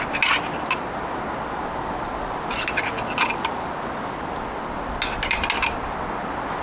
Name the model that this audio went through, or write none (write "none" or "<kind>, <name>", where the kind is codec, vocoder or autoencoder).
none